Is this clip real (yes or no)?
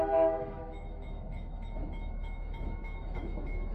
no